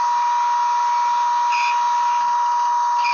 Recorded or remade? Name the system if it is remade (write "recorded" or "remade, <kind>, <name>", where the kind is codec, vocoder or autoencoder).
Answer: recorded